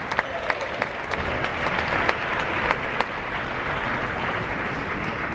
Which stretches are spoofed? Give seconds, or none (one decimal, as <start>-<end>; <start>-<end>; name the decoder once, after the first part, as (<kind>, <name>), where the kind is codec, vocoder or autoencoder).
none